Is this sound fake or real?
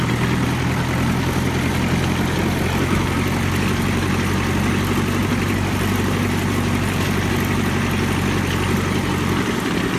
real